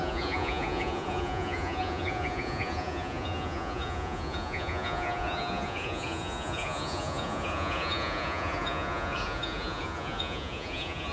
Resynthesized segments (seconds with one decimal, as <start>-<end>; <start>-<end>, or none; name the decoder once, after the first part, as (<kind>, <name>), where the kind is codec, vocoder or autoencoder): 0.0-11.1 (vocoder, Vocos)